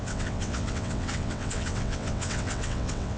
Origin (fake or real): fake